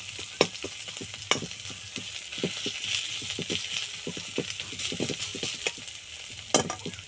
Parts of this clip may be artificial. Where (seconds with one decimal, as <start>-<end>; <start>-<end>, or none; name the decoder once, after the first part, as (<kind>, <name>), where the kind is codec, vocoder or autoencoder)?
none